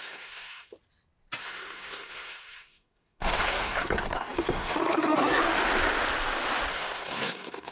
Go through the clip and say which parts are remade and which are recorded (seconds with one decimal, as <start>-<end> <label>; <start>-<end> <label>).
0.0-0.7 remade; 0.7-1.4 recorded; 1.4-5.4 remade; 5.4-6.7 recorded; 6.7-7.7 remade